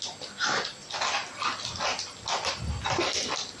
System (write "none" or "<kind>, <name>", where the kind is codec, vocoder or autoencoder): none